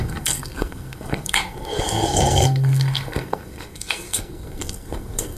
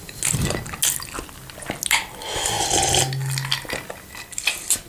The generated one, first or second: first